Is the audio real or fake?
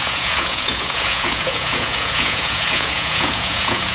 fake